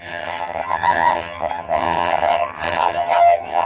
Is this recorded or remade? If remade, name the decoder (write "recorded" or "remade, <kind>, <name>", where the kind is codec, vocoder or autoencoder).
remade, vocoder, HiFi-GAN